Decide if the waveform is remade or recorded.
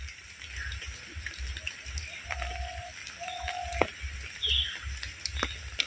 recorded